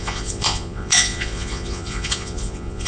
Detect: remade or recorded remade